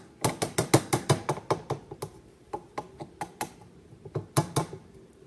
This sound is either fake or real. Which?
real